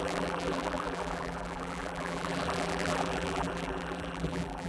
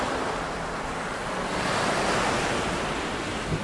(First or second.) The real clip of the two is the second